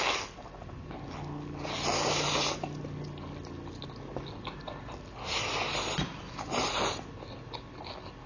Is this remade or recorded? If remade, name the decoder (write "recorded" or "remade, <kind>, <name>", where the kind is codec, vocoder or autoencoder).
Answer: recorded